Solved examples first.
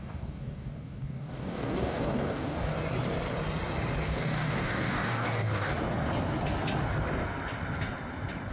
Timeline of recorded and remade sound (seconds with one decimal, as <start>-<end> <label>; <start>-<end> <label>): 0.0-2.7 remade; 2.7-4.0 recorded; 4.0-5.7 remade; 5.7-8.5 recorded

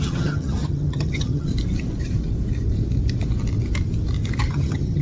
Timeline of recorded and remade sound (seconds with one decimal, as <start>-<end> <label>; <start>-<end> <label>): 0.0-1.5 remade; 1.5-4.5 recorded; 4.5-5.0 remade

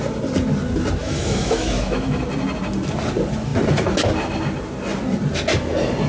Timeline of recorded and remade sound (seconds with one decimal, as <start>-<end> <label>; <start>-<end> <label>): 0.0-1.0 recorded; 1.0-2.2 remade; 2.2-6.1 recorded

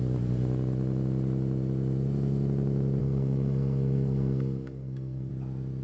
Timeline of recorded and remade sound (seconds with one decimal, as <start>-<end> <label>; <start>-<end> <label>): 0.0-3.0 recorded; 3.0-5.3 remade; 5.3-5.8 recorded

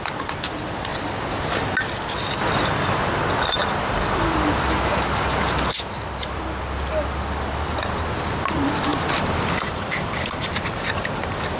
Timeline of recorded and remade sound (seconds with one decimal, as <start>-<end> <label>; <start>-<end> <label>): 0.0-0.9 remade; 0.9-2.6 recorded; 2.6-4.9 remade; 4.9-8.4 recorded; 8.4-11.6 remade